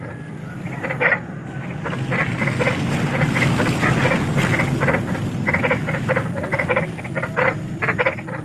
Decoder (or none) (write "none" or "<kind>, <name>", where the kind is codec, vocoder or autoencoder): none